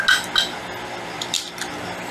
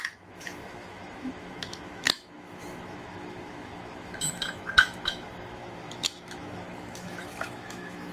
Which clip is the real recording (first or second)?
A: first